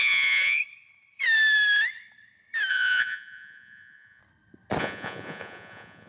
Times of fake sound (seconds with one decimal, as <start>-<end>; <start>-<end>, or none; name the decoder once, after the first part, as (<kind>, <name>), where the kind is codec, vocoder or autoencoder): 0.0-0.6 (vocoder, Vocos); 2.7-4.2; 4.8-6.1